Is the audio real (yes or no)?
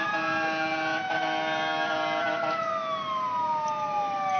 yes